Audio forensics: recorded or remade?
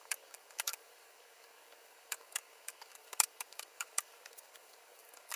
remade